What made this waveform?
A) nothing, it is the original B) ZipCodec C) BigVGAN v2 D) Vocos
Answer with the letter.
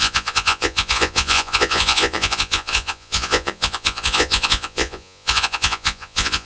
D